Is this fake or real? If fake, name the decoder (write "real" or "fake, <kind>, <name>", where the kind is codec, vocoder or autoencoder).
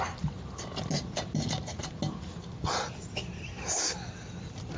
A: real